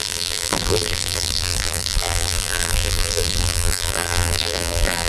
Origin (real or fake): fake